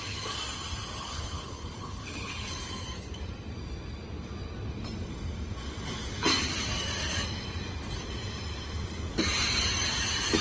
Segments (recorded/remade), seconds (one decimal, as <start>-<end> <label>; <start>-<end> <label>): 0.0-1.0 recorded; 1.0-2.5 remade; 2.5-10.4 recorded